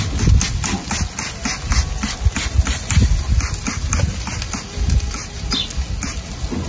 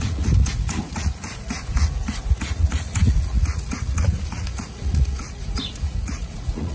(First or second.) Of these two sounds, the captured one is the first